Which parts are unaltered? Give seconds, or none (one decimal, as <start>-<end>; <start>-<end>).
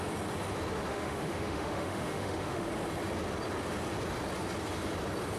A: 0.0-0.9; 2.7-5.4